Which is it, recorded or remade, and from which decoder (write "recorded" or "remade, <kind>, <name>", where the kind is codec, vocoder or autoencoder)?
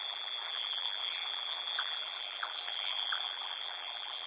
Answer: remade, vocoder, BigVGAN v2